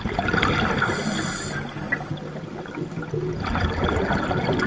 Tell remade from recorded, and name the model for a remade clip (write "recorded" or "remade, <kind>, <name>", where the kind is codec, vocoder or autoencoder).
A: recorded